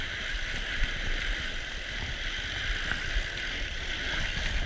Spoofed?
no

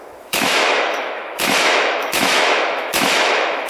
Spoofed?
yes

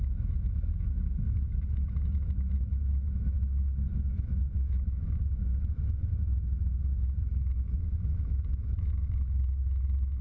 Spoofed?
yes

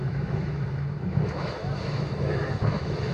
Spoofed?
yes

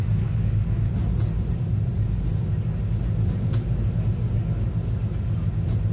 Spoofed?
no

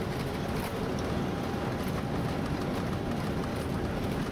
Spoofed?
no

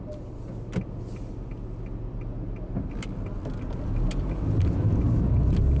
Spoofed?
no